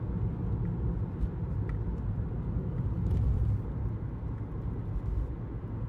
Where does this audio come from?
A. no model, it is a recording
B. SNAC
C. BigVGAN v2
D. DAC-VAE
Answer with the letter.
A